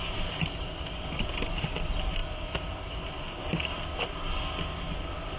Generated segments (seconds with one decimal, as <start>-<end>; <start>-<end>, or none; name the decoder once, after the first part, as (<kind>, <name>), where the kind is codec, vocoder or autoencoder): none